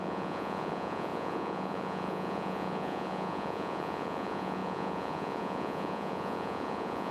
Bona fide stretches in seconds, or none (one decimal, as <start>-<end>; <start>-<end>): none